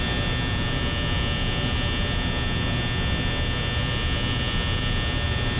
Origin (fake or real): real